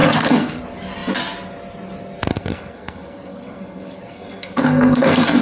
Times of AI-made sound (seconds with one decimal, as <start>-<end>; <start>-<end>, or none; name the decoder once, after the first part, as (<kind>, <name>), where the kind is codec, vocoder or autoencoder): 0.0-0.6 (codec, SNAC); 2.3-5.4